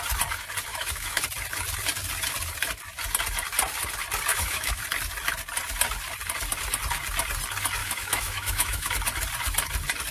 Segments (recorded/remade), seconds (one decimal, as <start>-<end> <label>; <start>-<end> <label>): 0.0-0.7 recorded; 0.7-1.2 remade; 1.2-4.3 recorded; 4.3-4.8 remade; 4.8-7.8 recorded; 7.8-8.9 remade; 8.9-10.1 recorded